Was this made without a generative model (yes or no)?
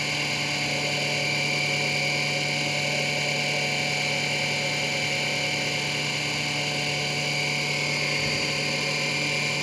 yes